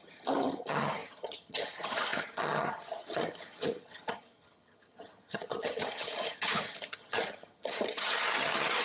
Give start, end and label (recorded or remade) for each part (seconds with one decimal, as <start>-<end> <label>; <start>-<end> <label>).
0.0-8.8 remade